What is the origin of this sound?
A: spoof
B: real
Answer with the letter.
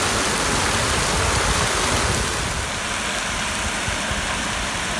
B